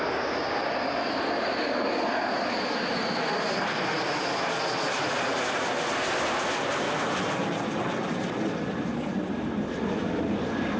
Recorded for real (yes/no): yes